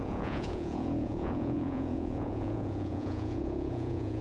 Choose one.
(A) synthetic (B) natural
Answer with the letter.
A